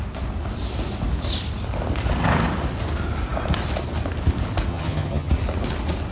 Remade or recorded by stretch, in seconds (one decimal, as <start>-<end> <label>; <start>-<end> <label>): 0.0-4.7 recorded; 4.7-5.3 remade; 5.3-6.1 recorded